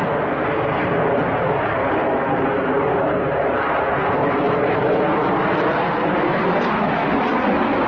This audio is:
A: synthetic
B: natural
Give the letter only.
B